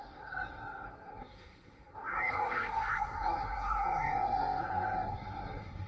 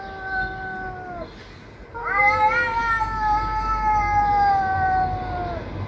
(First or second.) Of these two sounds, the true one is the second